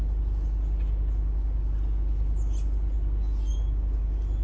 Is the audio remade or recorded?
recorded